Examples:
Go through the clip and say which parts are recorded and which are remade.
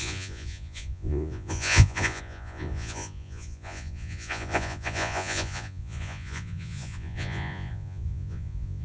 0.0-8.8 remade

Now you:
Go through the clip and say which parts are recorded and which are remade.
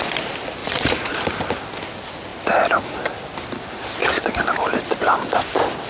0.0-0.6 recorded; 0.6-1.2 remade; 1.2-5.9 recorded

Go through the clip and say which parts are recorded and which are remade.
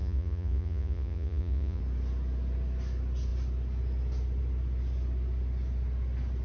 0.0-1.8 remade; 1.8-6.4 recorded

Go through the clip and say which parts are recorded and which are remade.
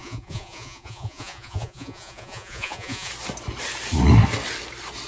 0.0-3.1 remade; 3.1-5.1 recorded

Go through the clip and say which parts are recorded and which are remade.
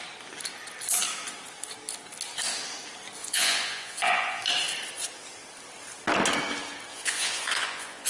0.0-3.2 recorded; 3.2-4.4 remade; 4.4-6.9 recorded; 6.9-8.1 remade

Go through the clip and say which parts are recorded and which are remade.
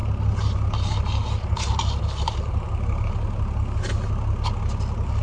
0.0-5.2 recorded